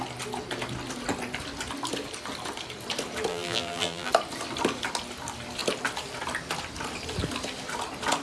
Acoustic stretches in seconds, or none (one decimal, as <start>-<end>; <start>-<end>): 0.0-3.3; 4.1-8.2